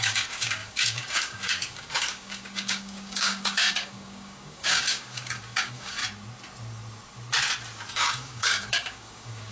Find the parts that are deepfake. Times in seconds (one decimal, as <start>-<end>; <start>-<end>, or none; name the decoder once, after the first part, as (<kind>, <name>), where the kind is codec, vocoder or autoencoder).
0.0-6.0 (codec, DAC); 7.9-9.5